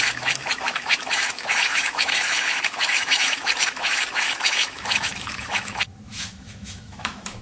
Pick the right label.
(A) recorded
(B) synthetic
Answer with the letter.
B